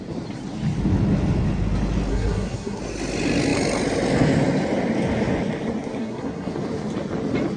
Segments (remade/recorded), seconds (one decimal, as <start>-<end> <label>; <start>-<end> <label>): 0.0-2.1 recorded; 2.1-2.8 remade; 2.8-6.0 recorded; 6.0-6.5 remade; 6.5-7.6 recorded